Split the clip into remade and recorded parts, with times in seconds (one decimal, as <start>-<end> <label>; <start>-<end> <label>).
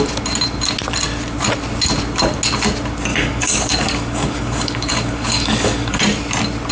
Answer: 0.0-3.1 recorded; 3.1-6.0 remade; 6.0-6.7 recorded